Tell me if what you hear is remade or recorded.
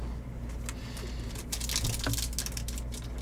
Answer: recorded